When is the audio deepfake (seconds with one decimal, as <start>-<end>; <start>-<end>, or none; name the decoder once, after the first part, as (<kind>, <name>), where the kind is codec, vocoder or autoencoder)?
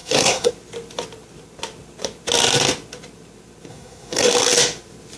0.0-0.5 (codec, SNAC); 3.7-4.3